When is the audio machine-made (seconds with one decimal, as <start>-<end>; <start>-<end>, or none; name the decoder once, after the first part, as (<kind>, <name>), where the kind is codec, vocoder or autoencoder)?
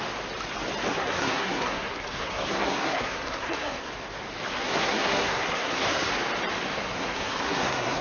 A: 0.9-3.9 (codec, SNAC); 4.5-6.1; 6.7-8.0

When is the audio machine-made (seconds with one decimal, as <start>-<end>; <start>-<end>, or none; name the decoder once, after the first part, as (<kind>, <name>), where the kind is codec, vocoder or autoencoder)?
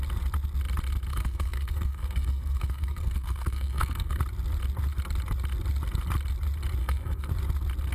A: 1.1-4.2 (codec, SNAC); 6.8-7.3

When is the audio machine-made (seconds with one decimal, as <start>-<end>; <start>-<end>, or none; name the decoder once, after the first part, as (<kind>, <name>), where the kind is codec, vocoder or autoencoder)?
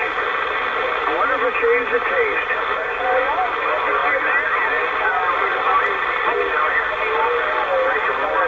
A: none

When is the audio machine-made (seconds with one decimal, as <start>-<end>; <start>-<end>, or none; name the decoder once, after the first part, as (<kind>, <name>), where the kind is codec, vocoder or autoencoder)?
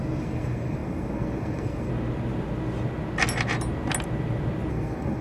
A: 0.0-1.9 (codec, SNAC); 4.7-5.2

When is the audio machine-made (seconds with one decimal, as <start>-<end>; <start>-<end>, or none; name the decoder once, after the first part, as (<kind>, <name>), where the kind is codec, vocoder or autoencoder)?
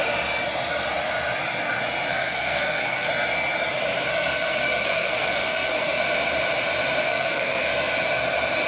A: 2.1-3.1 (codec, SNAC); 4.1-6.0; 7.0-7.7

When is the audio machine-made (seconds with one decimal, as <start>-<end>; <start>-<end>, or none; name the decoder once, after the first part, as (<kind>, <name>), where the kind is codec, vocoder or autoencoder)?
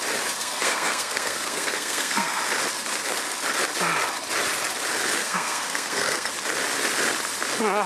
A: 0.4-2.4 (codec, SNAC); 5.2-6.3